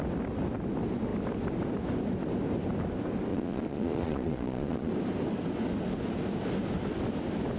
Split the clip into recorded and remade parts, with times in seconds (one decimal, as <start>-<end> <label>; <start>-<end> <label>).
0.0-3.3 recorded; 3.3-4.9 remade; 4.9-7.6 recorded